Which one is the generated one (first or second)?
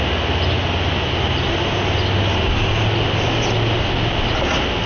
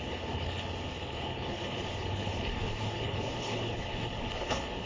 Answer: second